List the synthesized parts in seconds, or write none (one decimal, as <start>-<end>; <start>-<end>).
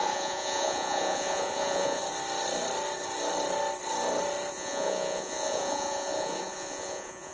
0.0-2.0; 4.5-7.3